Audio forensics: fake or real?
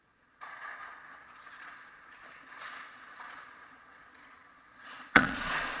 fake